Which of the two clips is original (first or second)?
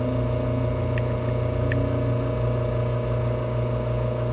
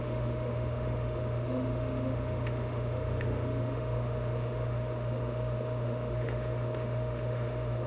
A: first